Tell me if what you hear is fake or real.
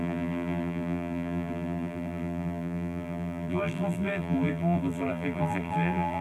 fake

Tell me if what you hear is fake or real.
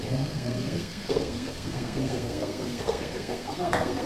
fake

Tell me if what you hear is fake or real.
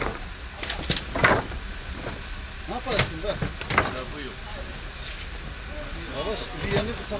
real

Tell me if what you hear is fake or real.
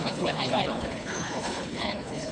fake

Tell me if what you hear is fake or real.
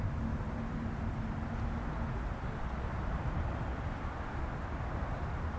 real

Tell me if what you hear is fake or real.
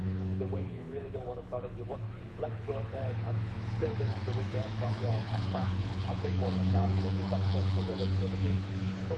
fake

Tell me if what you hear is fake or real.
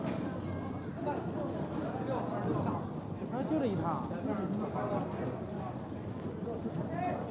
real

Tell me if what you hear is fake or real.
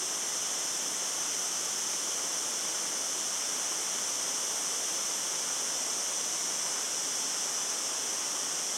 real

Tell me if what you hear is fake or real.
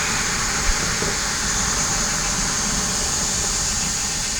real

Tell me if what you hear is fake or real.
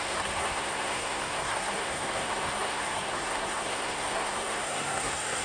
fake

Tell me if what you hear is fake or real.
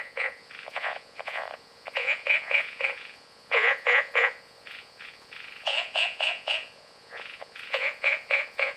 fake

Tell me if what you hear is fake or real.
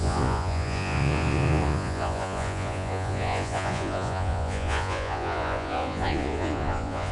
fake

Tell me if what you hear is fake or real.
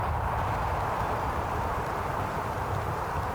fake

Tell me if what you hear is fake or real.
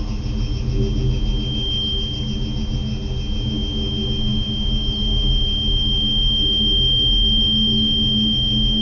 real